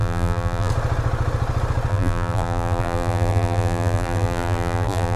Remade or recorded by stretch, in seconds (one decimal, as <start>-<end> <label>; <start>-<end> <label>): 0.0-0.7 remade; 0.7-1.9 recorded; 1.9-5.2 remade

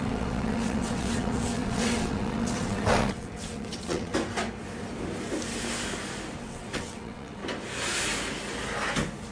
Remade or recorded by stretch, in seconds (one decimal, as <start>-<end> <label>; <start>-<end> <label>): 0.0-4.1 remade; 4.1-6.4 recorded; 6.4-7.4 remade; 7.4-9.3 recorded

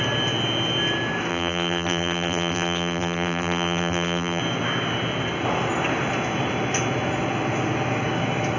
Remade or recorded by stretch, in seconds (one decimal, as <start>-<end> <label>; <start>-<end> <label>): 0.0-1.3 recorded; 1.3-4.4 remade; 4.4-8.6 recorded